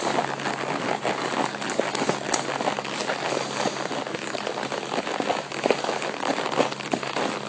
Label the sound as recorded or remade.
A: recorded